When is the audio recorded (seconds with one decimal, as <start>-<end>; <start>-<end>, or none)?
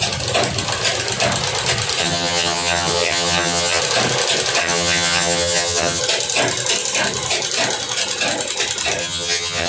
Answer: 0.0-2.0; 3.8-4.6; 6.0-9.0